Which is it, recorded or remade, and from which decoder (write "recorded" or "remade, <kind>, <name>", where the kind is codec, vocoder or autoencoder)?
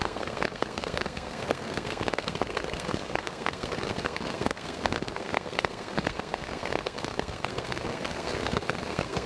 remade, codec, SNAC